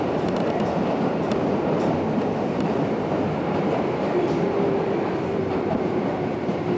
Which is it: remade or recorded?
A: remade